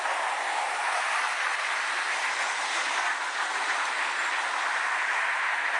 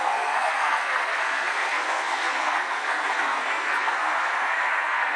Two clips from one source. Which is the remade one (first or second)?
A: second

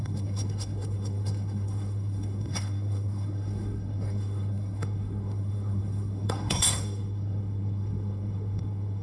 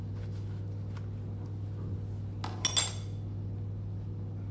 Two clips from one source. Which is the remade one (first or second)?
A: first